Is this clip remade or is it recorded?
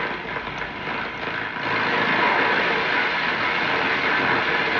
recorded